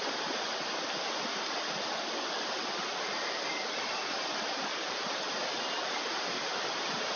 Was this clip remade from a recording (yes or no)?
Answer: no